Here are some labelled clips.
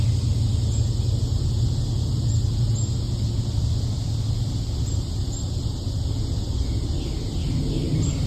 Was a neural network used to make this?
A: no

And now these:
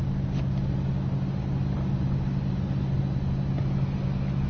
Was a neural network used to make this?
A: no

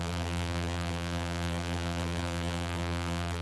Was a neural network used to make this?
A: yes